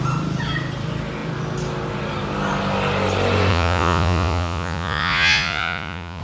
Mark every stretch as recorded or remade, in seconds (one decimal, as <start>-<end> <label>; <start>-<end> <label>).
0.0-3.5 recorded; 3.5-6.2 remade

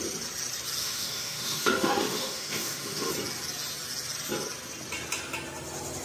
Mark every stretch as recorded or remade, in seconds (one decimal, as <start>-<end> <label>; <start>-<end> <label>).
0.0-0.8 recorded; 0.8-3.1 remade; 3.1-6.0 recorded

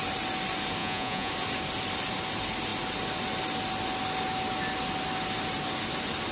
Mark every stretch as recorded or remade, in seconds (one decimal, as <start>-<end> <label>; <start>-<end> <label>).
0.0-0.8 recorded; 0.8-1.3 remade; 1.3-6.3 recorded